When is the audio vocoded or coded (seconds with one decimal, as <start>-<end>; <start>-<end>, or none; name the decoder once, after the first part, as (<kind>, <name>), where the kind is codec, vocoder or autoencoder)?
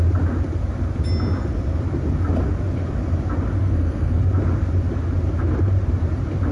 3.6-4.2 (codec, SNAC)